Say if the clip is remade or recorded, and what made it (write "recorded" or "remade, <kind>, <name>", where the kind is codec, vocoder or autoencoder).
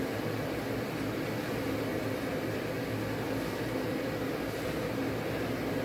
recorded